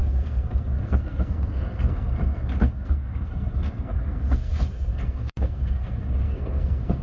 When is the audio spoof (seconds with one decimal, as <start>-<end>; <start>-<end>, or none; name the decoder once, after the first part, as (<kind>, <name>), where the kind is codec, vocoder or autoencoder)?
0.0-7.0 (codec, SNAC)